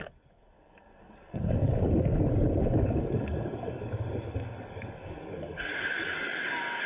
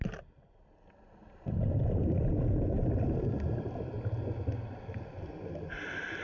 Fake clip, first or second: first